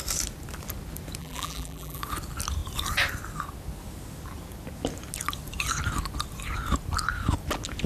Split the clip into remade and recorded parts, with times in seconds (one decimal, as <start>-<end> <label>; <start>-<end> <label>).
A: 0.0-1.2 recorded; 1.2-2.0 remade; 2.0-7.9 recorded